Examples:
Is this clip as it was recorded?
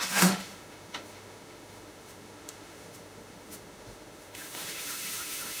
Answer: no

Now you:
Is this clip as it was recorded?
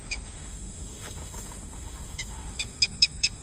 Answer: no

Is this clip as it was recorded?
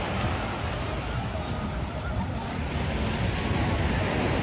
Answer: yes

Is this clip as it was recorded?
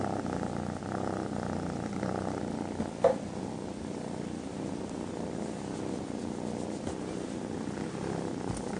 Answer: yes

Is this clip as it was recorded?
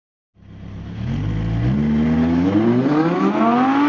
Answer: yes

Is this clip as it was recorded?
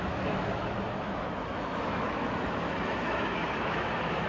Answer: no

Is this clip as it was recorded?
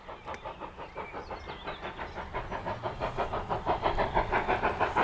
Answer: yes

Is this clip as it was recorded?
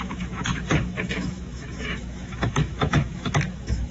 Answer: no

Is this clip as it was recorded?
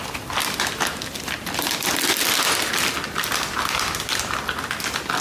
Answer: yes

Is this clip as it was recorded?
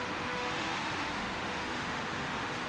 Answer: no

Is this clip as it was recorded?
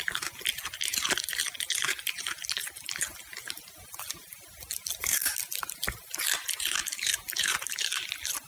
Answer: yes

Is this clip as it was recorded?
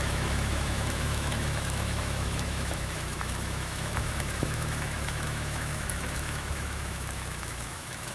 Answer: no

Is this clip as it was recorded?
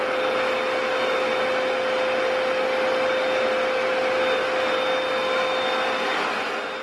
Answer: yes